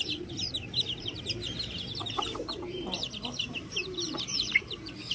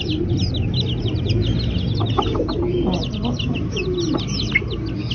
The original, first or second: second